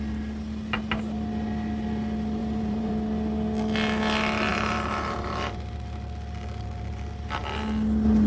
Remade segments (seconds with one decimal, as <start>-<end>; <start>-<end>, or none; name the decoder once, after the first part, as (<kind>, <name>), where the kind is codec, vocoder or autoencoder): 2.4-2.9 (vocoder, BigVGAN v2); 4.5-5.5